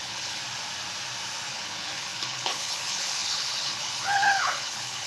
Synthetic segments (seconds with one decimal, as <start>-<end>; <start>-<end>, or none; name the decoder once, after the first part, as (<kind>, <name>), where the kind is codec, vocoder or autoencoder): 0.0-0.4 (codec, HILCodec); 1.5-5.1